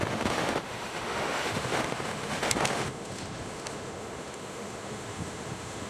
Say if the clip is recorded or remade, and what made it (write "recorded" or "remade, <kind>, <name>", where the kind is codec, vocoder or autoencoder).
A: remade, autoencoder, DAC-VAE